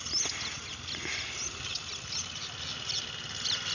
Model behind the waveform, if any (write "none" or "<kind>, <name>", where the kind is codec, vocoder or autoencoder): none